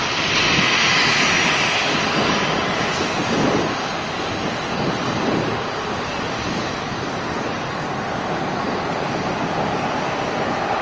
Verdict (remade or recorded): recorded